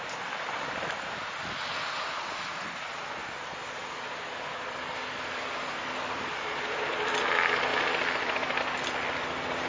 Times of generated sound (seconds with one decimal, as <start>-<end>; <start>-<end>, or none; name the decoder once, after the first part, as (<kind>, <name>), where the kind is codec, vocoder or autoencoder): none